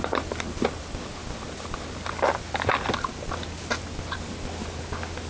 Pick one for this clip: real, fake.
real